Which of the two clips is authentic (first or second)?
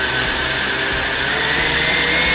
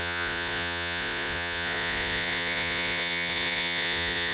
first